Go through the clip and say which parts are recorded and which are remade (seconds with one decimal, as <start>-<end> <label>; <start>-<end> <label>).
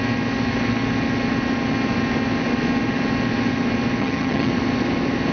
0.0-4.0 recorded; 4.0-4.5 remade; 4.5-5.3 recorded